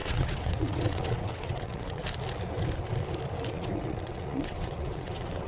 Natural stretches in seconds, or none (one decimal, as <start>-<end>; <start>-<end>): 2.0-3.5